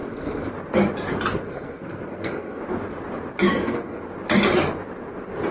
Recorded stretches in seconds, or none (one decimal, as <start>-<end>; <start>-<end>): 0.5-1.3; 2.6-3.5; 4.0-5.5